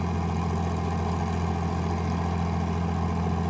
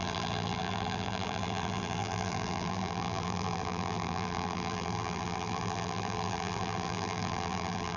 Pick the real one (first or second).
first